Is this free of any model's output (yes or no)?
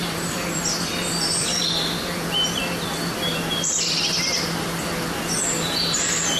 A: yes